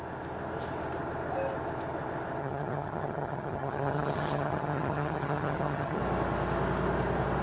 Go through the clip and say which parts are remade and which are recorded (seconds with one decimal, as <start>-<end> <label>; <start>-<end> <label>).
0.0-2.4 recorded; 2.4-6.0 remade; 6.0-7.4 recorded